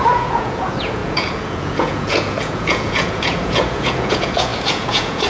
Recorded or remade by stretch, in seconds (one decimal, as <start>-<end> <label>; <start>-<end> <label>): 0.0-5.3 remade